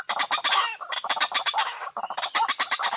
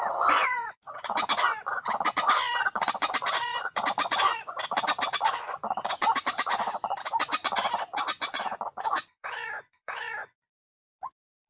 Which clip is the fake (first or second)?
second